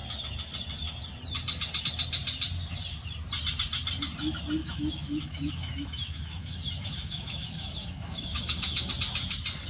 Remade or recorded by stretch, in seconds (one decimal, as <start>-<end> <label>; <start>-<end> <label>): 0.0-4.6 recorded; 4.6-8.9 remade; 8.9-9.7 recorded